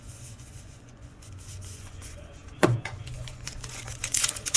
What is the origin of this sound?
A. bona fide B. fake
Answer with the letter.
B